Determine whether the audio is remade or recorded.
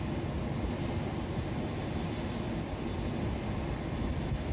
recorded